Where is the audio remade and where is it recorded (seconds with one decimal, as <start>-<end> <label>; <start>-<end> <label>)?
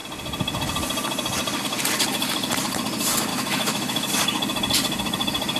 0.0-3.3 recorded; 3.3-4.1 remade; 4.1-5.6 recorded